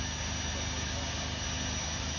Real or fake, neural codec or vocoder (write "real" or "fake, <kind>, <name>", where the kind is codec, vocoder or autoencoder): real